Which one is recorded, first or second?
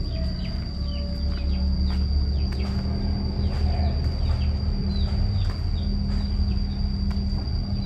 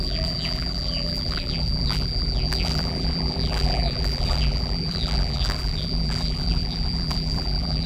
first